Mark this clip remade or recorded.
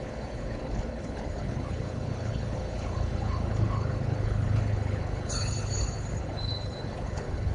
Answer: remade